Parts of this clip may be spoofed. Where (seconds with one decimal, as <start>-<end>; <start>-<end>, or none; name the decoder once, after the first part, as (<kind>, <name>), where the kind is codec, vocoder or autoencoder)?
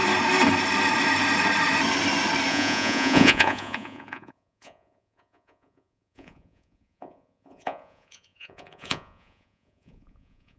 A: 2.5-10.6 (vocoder, Vocos)